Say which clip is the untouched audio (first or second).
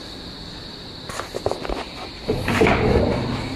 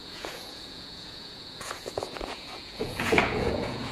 first